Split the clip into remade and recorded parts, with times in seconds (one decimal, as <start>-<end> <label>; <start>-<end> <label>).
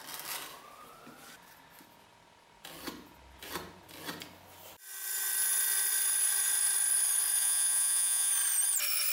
0.0-7.4 recorded; 7.4-8.3 remade; 8.3-9.1 recorded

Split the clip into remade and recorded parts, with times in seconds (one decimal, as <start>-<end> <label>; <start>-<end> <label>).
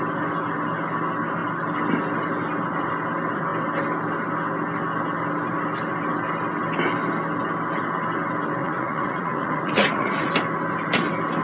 0.0-8.6 recorded; 8.6-10.3 remade; 10.3-11.4 recorded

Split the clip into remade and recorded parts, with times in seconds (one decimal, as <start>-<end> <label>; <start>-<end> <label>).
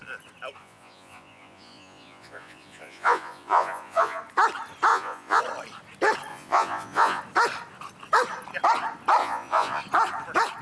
0.0-0.6 recorded; 0.6-4.2 remade; 4.2-4.9 recorded; 4.9-5.4 remade; 5.4-6.3 recorded; 6.3-7.2 remade; 7.2-9.2 recorded; 9.2-9.8 remade; 9.8-10.6 recorded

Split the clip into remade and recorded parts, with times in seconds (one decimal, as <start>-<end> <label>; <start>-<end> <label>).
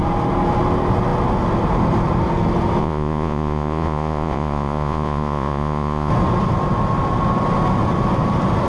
0.0-2.8 recorded; 2.8-6.1 remade; 6.1-8.7 recorded